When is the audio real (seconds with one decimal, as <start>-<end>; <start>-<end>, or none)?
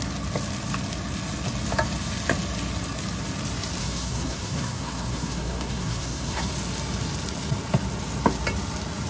0.0-3.8; 6.5-9.1